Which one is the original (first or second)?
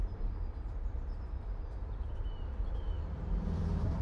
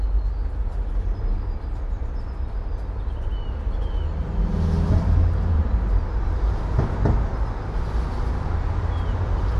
second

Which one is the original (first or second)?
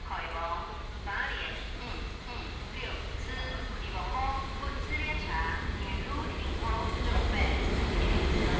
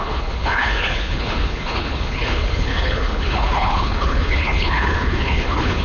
first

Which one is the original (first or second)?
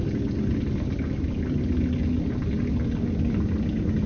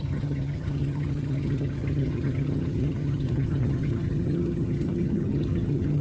first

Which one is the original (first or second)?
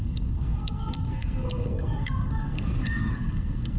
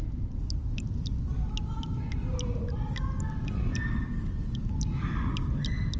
second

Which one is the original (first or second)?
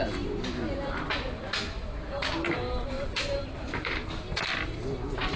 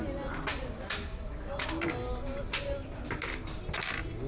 second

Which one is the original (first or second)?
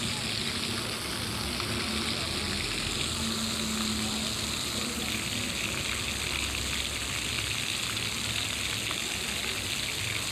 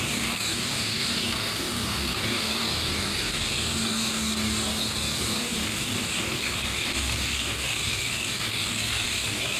first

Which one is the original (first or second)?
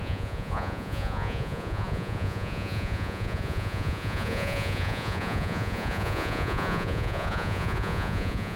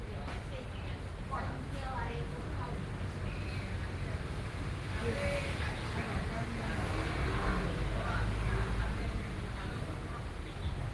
second